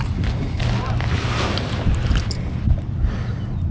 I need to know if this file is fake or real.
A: real